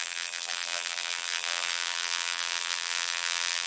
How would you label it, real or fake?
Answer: fake